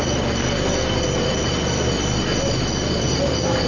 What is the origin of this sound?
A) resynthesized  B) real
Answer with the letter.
B